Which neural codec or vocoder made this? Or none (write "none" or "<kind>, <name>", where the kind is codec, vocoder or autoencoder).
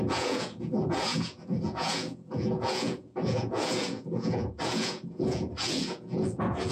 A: vocoder, Vocos